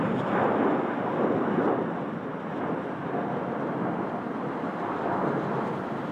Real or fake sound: real